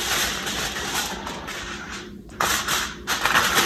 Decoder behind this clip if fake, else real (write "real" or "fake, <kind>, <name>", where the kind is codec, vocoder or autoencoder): fake, vocoder, BigVGAN v2